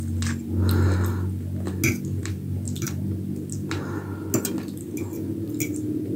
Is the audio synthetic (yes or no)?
no